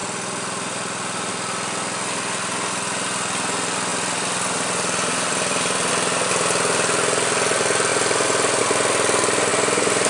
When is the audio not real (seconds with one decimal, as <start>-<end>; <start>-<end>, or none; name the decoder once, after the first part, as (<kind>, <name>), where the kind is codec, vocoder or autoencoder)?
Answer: 3.9-5.9 (vocoder, BigVGAN v2); 7.9-8.6; 9.5-10.1